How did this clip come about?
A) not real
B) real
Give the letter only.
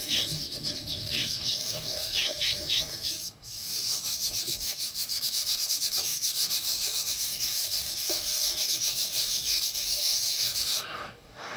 A